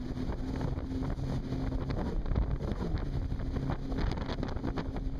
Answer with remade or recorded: recorded